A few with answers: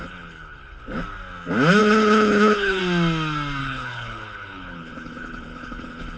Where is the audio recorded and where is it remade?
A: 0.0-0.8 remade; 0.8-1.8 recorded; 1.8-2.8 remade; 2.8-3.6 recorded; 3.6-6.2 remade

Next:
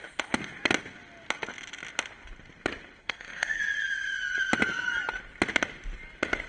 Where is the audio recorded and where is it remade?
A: 0.0-3.0 recorded; 3.0-3.6 remade; 3.6-6.5 recorded